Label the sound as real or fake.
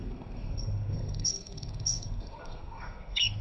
fake